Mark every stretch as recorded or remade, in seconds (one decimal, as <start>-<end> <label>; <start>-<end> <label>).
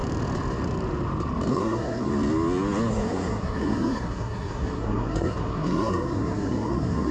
0.0-1.5 recorded; 1.5-2.1 remade; 2.1-2.9 recorded; 2.9-7.1 remade